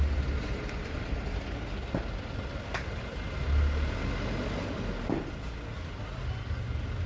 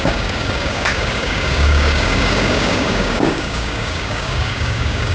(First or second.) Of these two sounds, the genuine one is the first